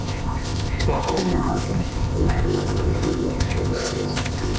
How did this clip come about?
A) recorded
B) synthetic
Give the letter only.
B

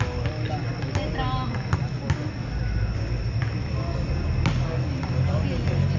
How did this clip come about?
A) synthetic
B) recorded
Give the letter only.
B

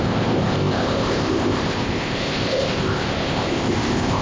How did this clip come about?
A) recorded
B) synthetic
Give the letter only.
B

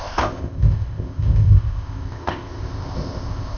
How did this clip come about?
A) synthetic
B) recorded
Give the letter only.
A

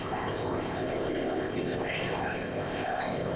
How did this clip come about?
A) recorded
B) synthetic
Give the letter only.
B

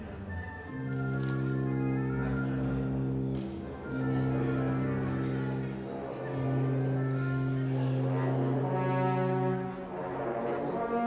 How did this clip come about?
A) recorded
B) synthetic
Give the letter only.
A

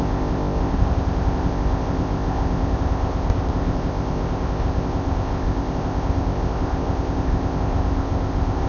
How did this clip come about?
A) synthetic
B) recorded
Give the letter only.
A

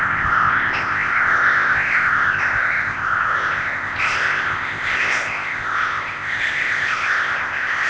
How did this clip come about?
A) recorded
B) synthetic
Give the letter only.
B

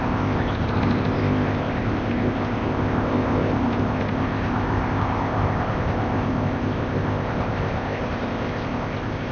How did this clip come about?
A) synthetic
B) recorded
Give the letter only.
A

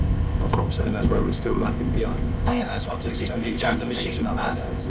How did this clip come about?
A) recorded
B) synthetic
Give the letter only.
B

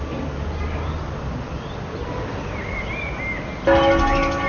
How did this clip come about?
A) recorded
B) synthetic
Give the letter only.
A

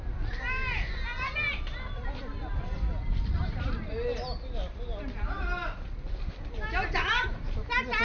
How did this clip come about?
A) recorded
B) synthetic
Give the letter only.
A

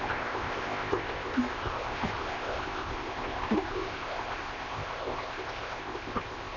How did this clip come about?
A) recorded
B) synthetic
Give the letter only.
B